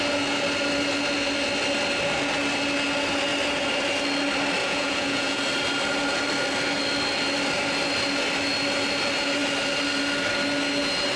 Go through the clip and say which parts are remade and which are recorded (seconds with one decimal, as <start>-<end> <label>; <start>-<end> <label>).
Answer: 0.0-4.6 recorded; 4.6-5.4 remade; 5.4-11.2 recorded